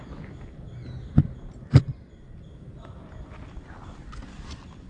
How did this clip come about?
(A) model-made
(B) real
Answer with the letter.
B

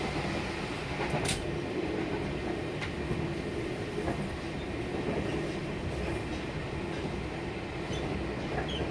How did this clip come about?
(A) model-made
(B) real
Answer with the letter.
B